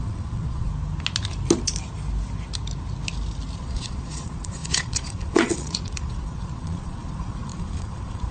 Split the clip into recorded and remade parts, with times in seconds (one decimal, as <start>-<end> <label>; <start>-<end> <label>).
0.0-0.7 remade; 0.7-3.6 recorded; 3.6-8.3 remade

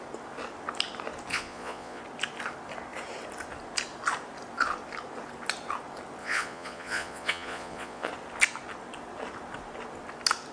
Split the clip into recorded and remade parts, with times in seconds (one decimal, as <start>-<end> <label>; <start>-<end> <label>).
0.0-1.3 recorded; 1.3-2.0 remade; 2.0-6.2 recorded; 6.2-8.1 remade; 8.1-10.5 recorded

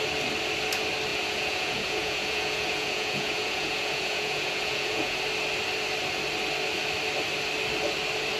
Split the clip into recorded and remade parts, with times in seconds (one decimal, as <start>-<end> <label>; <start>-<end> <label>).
0.0-1.1 recorded; 1.1-5.2 remade; 5.2-8.4 recorded

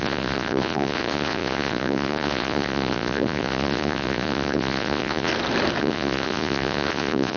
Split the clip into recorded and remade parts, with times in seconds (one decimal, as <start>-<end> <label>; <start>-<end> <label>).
0.0-5.3 remade; 5.3-5.8 recorded; 5.8-7.4 remade

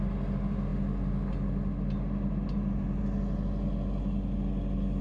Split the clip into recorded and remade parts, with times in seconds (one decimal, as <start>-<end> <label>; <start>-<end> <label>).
0.0-5.0 recorded

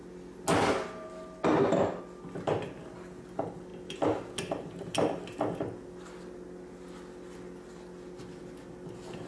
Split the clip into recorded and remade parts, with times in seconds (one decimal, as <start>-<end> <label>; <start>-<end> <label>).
0.0-9.3 recorded

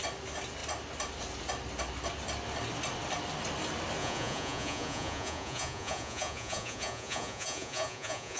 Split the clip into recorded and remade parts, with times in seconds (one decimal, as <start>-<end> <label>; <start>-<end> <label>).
0.0-4.0 recorded; 4.0-8.4 remade